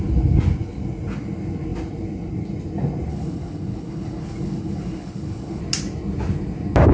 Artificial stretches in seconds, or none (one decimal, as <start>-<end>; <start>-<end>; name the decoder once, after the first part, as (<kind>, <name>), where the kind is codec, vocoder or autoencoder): 3.1-5.6 (codec, HILCodec)